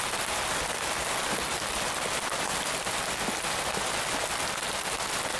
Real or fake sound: real